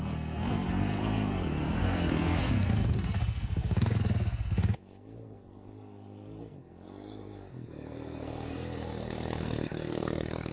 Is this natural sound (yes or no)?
no